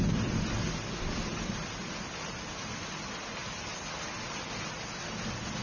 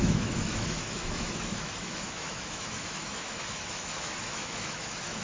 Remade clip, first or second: second